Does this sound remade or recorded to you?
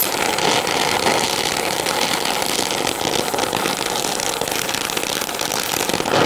recorded